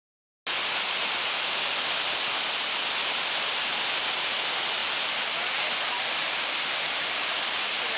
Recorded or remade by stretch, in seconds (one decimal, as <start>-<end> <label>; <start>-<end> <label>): 0.0-8.0 recorded